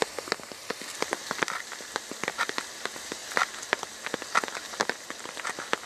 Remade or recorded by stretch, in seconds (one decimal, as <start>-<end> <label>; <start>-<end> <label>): 0.0-5.9 recorded